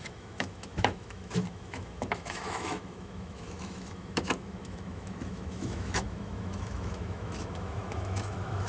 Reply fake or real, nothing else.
fake